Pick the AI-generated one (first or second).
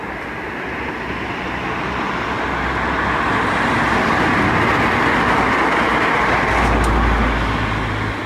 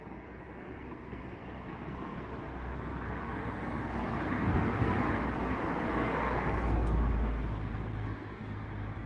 second